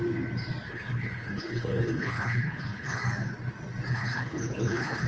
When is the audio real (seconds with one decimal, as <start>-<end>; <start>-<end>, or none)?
0.0-0.7; 3.0-3.9